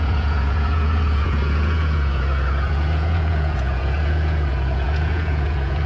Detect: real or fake fake